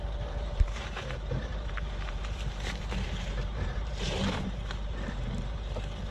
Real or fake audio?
fake